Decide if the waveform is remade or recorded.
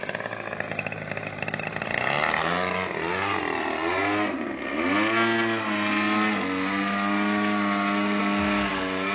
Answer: recorded